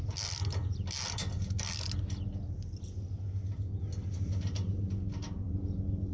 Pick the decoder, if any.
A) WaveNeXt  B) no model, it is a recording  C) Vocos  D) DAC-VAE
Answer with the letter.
B